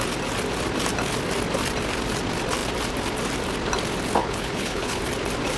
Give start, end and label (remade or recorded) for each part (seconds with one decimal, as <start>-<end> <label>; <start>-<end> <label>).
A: 0.0-4.2 recorded; 4.2-5.0 remade; 5.0-5.6 recorded